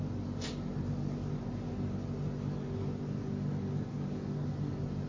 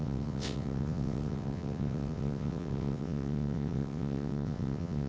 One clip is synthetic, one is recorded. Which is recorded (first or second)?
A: first